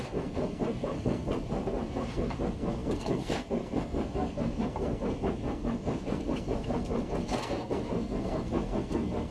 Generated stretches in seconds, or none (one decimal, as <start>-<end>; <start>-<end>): 0.0-9.3